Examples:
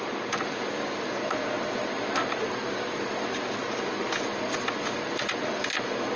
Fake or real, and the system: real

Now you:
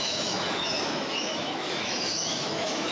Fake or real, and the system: fake, autoencoder, DAC-VAE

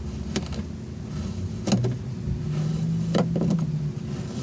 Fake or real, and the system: real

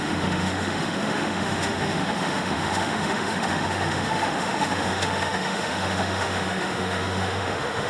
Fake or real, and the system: fake, autoencoder, DAC-VAE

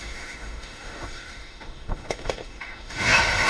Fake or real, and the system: fake, autoencoder, DAC-VAE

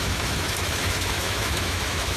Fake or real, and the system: fake, autoencoder, DAC-VAE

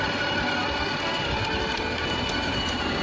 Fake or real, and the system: real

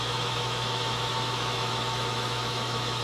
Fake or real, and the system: fake, autoencoder, DAC-VAE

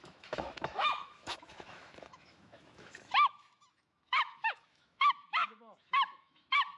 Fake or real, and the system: fake, autoencoder, DAC-VAE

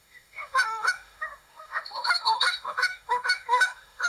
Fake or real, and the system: fake, autoencoder, DAC-VAE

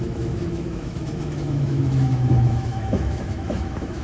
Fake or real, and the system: fake, autoencoder, DAC-VAE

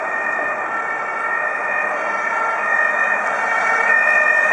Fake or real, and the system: real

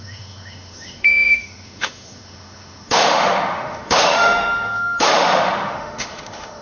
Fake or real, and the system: fake, autoencoder, DAC-VAE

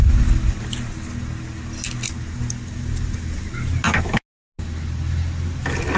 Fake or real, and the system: real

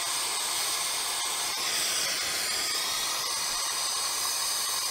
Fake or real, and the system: real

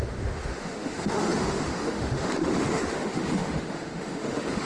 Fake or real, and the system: fake, autoencoder, DAC-VAE